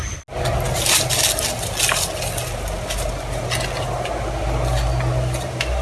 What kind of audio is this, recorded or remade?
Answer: recorded